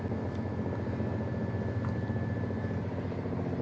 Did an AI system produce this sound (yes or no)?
no